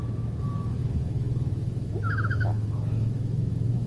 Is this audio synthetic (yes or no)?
yes